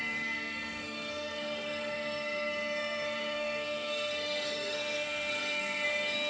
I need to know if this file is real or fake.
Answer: fake